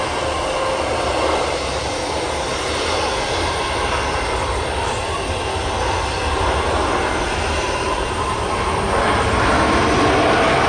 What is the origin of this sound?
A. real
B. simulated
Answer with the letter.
A